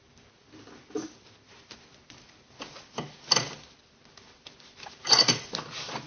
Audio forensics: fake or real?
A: real